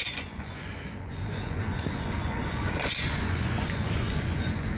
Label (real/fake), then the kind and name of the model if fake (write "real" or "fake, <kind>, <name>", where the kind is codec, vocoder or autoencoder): fake, vocoder, Vocos